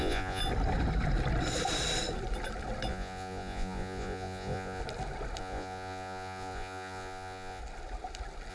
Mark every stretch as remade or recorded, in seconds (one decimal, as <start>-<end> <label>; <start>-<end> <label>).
0.0-0.4 remade; 0.4-2.9 recorded; 2.9-4.8 remade; 4.8-5.4 recorded; 5.4-7.6 remade; 7.6-8.5 recorded